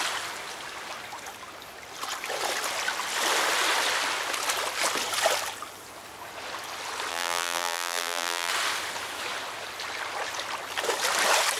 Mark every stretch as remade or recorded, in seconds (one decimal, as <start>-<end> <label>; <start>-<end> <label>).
0.0-7.1 recorded; 7.1-8.5 remade; 8.5-11.6 recorded